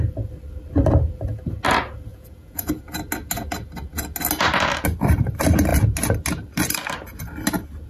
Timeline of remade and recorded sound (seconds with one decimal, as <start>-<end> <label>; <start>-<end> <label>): 0.0-2.1 recorded; 2.1-2.6 remade; 2.6-7.9 recorded